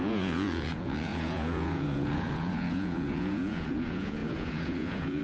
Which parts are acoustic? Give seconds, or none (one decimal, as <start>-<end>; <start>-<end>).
none

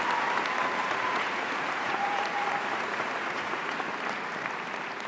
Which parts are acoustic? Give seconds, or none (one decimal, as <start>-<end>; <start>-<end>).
0.0-0.8; 3.8-5.1

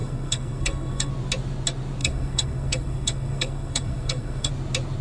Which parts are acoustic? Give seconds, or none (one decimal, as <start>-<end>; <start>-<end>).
1.1-2.0; 4.5-5.0

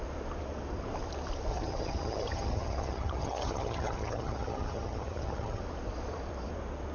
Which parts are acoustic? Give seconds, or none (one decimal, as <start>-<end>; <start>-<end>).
0.0-1.5; 5.6-6.9

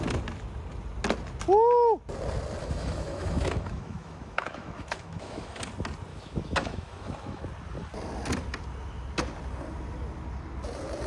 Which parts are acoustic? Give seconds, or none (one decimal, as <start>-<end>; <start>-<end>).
0.0-2.6; 5.6-6.1; 7.4-11.1

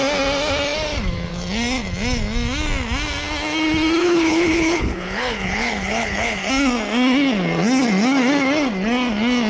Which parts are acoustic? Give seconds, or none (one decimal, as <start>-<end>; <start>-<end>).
0.0-4.0; 6.5-9.5

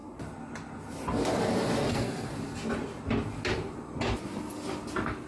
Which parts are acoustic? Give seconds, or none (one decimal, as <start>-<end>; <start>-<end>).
0.0-1.9; 2.3-5.3